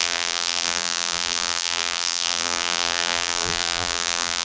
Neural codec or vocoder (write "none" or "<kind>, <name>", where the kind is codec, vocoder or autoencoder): vocoder, BigVGAN v2